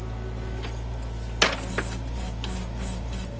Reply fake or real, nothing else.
real